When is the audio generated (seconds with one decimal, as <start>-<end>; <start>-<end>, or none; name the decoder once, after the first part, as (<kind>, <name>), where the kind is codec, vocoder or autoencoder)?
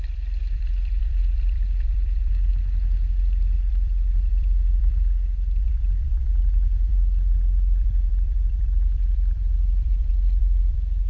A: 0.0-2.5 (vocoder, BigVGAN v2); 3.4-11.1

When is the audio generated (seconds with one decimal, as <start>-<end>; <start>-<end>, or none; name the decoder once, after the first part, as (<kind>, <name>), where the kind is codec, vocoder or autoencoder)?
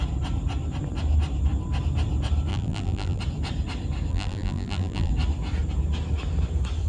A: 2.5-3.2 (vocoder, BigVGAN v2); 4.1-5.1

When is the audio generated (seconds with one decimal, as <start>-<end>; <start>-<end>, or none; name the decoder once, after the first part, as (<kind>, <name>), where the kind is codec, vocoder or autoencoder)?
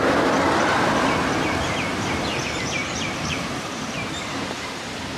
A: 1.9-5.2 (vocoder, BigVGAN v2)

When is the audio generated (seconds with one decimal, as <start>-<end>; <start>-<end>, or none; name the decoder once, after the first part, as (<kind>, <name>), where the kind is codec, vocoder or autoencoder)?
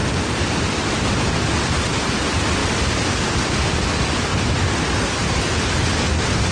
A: none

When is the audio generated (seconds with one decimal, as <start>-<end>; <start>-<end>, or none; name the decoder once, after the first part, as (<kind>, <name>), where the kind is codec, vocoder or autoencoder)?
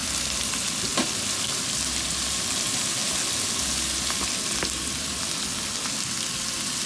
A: 0.0-0.5 (vocoder, BigVGAN v2); 0.9-1.6